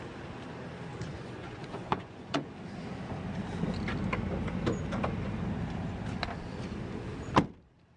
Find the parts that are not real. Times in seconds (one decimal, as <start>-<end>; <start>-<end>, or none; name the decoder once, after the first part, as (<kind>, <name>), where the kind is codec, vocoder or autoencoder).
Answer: 0.9-2.5 (vocoder, Vocos)